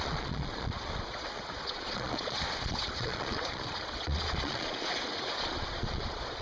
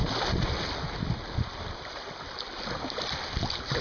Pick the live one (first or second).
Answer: second